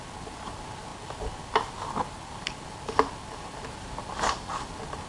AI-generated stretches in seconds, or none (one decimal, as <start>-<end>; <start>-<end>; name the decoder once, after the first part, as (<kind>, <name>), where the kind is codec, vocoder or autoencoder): none